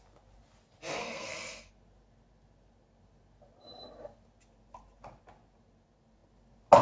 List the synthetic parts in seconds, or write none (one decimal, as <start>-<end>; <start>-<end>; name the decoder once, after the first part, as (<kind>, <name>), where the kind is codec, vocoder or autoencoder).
1.0-1.7 (codec, SNAC)